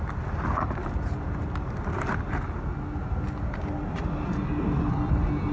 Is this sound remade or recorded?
recorded